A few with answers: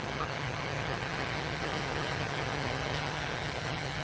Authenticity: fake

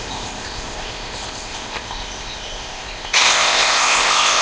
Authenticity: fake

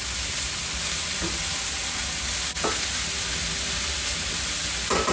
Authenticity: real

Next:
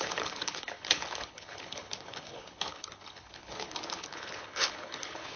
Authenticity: fake